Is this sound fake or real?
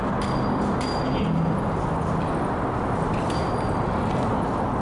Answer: real